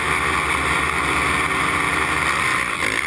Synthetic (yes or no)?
no